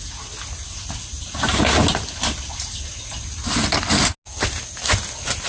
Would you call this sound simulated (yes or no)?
no